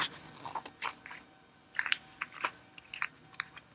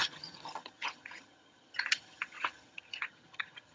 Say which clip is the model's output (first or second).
second